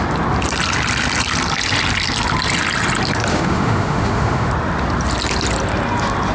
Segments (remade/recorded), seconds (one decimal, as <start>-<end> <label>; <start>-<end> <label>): 0.0-3.3 recorded; 3.3-4.5 remade; 4.5-6.3 recorded